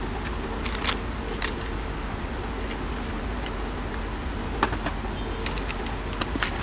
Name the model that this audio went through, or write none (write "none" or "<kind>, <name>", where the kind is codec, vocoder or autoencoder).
none